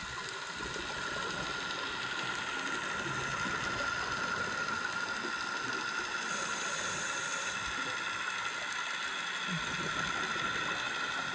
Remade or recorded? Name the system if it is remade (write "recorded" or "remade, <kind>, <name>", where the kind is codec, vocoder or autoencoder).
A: recorded